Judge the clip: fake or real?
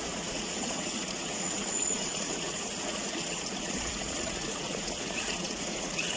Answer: fake